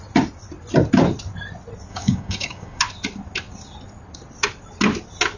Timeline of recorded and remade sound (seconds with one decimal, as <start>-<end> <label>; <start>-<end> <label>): 0.0-1.9 recorded; 1.9-2.8 remade; 2.8-5.4 recorded